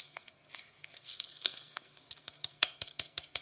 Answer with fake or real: fake